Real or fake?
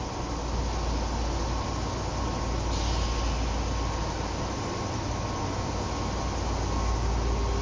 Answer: real